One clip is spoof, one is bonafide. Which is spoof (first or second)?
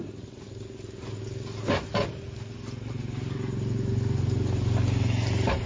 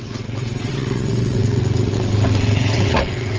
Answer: second